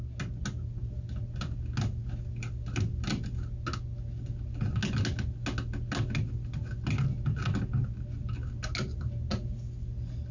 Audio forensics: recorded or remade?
recorded